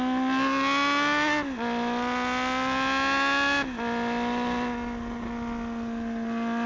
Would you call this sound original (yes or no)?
yes